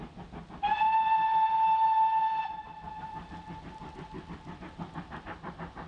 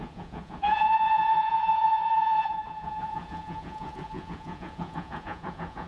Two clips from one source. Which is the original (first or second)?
first